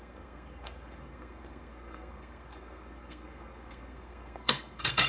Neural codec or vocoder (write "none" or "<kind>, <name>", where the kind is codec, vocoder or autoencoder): codec, SNAC